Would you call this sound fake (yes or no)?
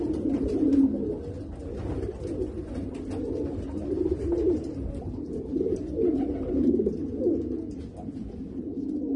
no